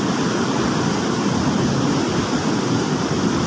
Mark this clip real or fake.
real